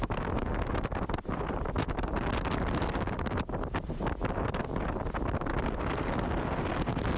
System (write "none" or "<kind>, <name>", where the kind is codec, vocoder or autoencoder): none